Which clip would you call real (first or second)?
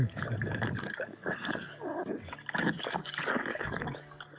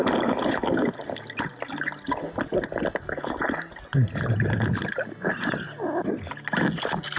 second